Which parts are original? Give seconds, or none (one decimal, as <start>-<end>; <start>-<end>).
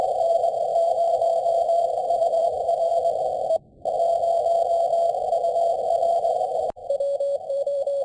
2.9-6.1; 6.8-7.5